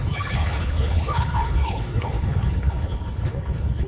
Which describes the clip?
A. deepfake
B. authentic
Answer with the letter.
A